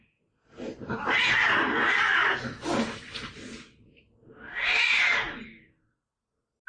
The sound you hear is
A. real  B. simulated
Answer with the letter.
A